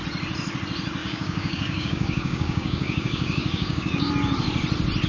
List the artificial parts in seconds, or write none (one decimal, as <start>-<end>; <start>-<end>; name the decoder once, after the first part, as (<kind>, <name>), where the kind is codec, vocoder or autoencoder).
1.0-4.1 (codec, DAC)